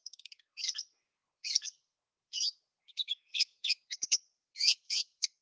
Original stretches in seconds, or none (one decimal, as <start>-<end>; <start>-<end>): none